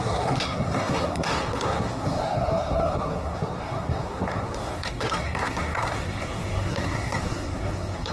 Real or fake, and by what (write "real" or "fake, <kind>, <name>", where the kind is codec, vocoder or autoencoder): fake, codec, SNAC